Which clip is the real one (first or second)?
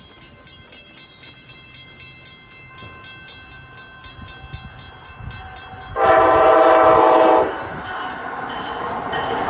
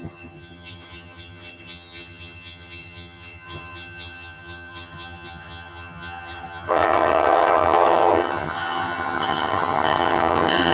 first